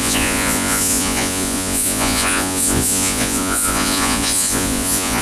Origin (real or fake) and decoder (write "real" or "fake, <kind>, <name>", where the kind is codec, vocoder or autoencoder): fake, vocoder, Vocos